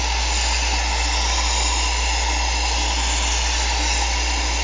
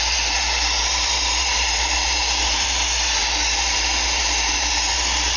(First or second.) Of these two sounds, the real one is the first